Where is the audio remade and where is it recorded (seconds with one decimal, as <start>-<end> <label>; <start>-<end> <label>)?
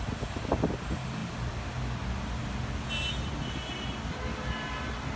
0.0-5.2 recorded